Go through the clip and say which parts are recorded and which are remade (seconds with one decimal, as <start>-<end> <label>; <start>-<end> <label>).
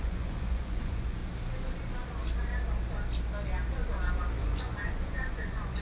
0.0-1.2 remade; 1.2-4.4 recorded; 4.4-5.8 remade